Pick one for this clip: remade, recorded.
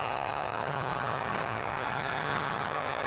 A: remade